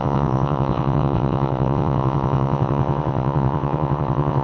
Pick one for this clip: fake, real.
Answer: fake